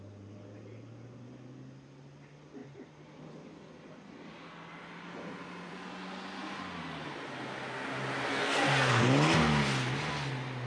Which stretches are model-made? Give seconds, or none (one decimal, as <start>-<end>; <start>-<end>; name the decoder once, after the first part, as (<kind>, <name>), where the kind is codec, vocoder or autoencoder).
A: 8.3-8.9 (codec, SNAC)